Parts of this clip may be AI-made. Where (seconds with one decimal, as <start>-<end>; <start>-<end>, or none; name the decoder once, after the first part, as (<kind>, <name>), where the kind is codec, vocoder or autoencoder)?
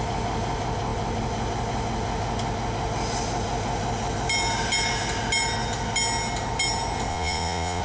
7.1-7.8 (vocoder, Vocos)